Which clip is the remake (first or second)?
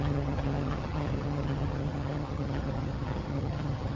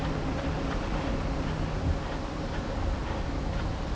first